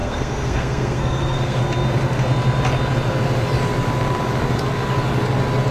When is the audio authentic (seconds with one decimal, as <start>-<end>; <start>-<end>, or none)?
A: 1.6-5.7